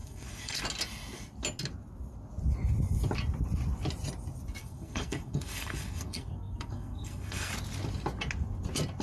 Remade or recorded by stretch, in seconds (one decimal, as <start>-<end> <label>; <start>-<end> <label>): 0.0-0.6 remade; 0.6-4.6 recorded; 4.6-7.5 remade; 7.5-9.0 recorded